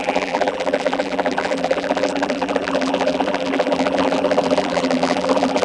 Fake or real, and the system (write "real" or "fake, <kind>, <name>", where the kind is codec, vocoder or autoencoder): fake, vocoder, BigVGAN v2